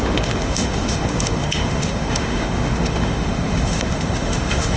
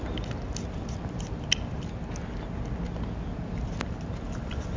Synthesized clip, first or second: first